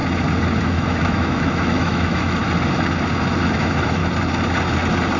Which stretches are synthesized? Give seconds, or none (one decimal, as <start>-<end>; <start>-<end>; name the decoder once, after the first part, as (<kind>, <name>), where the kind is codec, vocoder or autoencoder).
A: 0.6-2.4 (autoencoder, DAC-VAE); 3.6-4.0